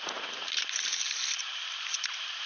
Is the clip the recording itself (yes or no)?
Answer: no